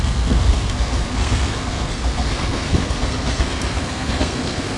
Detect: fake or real fake